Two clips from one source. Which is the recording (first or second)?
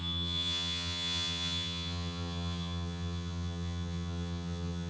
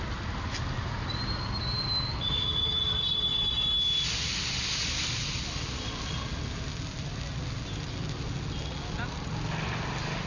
second